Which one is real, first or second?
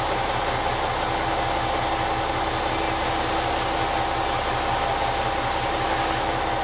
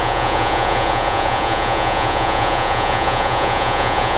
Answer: first